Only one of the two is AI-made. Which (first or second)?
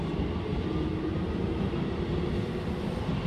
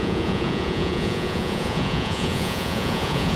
second